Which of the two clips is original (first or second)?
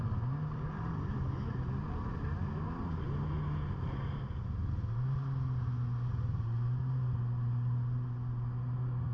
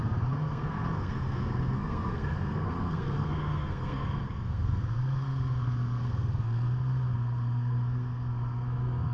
first